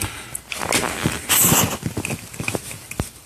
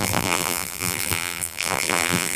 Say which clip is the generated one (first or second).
second